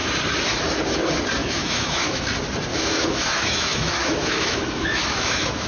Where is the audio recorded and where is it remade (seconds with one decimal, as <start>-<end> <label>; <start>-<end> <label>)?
0.0-1.4 recorded; 1.4-2.2 remade; 2.2-2.7 recorded; 2.7-5.7 remade